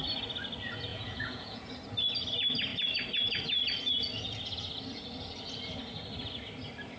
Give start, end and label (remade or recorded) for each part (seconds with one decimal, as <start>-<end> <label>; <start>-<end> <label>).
0.0-0.9 recorded; 0.9-1.7 remade; 1.7-7.0 recorded

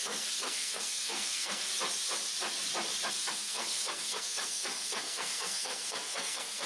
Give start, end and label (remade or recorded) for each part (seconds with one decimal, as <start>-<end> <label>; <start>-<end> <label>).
0.0-1.7 remade; 1.7-3.1 recorded; 3.1-6.7 remade

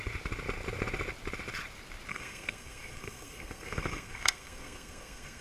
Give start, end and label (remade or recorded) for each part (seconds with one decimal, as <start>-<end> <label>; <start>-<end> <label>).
0.0-2.1 recorded; 2.1-5.4 remade

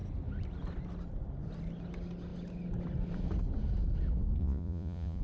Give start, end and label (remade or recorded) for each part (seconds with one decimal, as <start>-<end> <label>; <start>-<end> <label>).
0.0-4.4 recorded; 4.4-5.2 remade

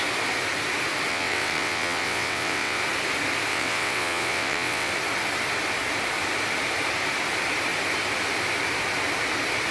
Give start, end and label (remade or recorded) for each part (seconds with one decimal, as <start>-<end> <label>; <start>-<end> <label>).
0.0-1.1 recorded; 1.1-2.8 remade; 2.8-3.5 recorded; 3.5-4.9 remade; 4.9-9.7 recorded

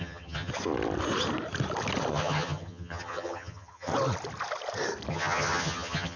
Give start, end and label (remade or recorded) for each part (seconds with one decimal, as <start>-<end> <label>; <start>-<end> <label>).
0.0-0.5 remade; 0.5-2.1 recorded; 2.1-3.9 remade; 3.9-5.1 recorded; 5.1-6.2 remade

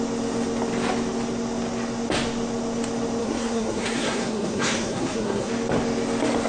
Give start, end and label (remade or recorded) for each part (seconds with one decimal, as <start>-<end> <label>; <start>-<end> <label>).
0.0-3.2 recorded; 3.2-5.5 remade; 5.5-6.5 recorded

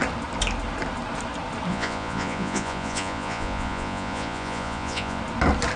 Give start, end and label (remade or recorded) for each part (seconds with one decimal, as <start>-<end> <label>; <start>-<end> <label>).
0.0-1.7 recorded; 1.7-5.2 remade; 5.2-5.8 recorded